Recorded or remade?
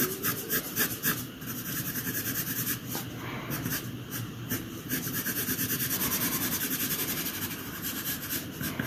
remade